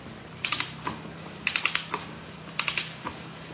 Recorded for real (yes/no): yes